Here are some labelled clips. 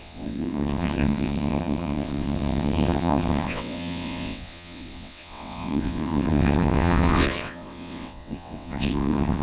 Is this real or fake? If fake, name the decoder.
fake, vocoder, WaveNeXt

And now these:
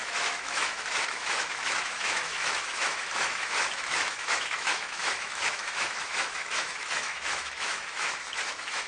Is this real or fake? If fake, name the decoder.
fake, autoencoder, DAC-VAE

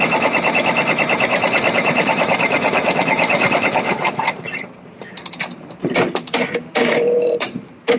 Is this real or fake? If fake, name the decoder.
fake, vocoder, BigVGAN v2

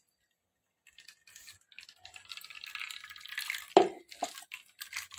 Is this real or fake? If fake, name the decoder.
real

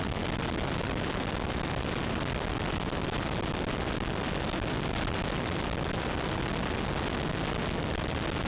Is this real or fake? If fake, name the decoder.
real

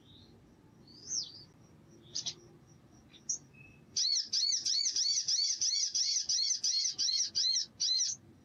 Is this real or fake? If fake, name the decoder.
real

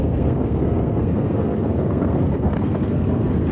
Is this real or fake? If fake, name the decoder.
fake, codec, SNAC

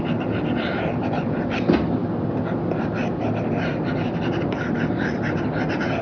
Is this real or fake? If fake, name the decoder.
real